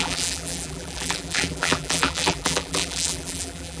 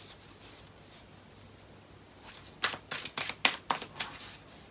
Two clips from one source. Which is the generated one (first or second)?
first